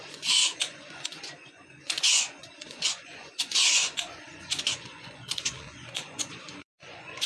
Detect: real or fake fake